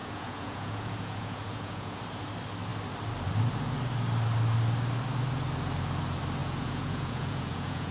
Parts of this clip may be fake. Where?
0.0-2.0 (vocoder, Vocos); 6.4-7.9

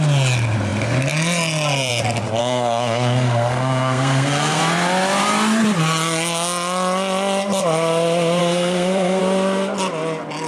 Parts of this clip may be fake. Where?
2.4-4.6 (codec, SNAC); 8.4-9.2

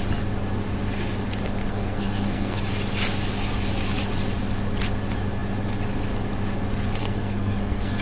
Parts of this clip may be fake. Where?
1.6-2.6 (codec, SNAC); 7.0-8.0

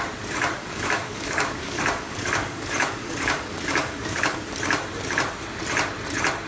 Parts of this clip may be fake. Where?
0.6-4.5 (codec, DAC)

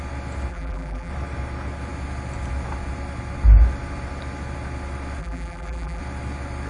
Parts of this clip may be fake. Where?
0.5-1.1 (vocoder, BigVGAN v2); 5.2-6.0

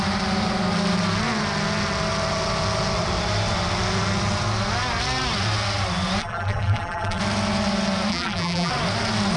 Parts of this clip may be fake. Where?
6.2-7.2 (vocoder, BigVGAN v2); 8.1-8.7